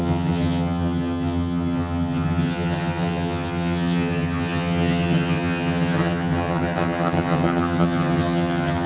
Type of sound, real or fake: fake